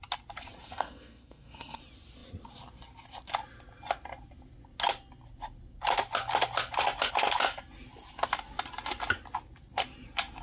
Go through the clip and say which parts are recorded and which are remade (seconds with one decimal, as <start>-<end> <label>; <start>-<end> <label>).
0.0-0.6 recorded; 0.6-1.8 remade; 1.8-10.4 recorded